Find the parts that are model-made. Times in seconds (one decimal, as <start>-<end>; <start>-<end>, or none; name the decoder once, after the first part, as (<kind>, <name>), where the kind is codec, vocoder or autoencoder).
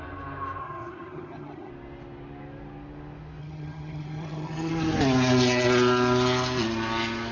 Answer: 0.6-1.7 (vocoder, HiFi-GAN); 3.4-4.7